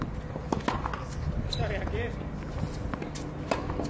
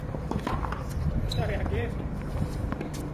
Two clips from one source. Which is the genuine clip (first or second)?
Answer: first